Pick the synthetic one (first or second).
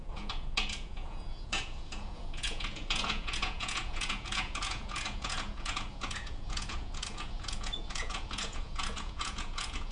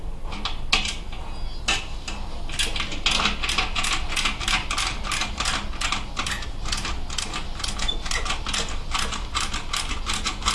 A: first